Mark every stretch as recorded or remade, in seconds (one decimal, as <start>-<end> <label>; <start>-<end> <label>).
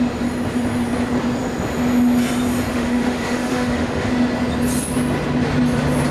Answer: 0.0-2.7 recorded; 2.7-4.1 remade; 4.1-6.1 recorded